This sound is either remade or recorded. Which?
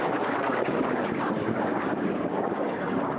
remade